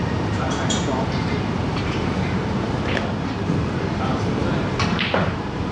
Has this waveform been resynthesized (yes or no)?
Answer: yes